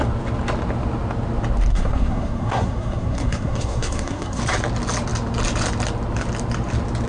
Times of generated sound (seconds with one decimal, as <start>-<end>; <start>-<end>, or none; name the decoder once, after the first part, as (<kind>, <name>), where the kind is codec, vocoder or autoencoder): 1.7-4.4 (codec, SNAC)